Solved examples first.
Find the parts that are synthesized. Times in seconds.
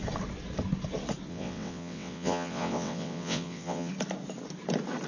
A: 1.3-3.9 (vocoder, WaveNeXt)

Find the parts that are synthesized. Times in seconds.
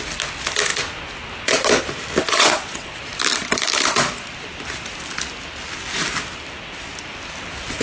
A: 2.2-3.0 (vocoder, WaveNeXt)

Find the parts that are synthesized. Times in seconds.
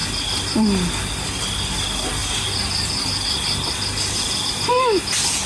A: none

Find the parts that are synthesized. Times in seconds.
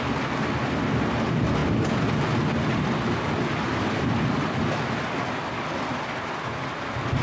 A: none